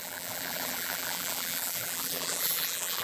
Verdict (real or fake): fake